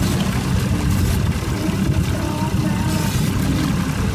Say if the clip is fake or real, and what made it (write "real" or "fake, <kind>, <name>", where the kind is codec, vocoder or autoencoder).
real